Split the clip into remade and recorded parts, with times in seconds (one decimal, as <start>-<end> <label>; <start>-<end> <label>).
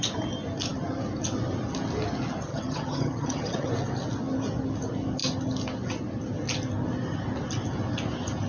0.0-2.5 recorded; 2.5-3.7 remade; 3.7-8.5 recorded